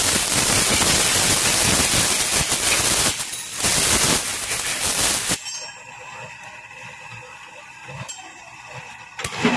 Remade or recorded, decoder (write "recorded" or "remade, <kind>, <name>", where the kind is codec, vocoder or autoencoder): recorded